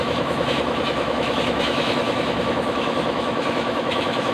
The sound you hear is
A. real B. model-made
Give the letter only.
B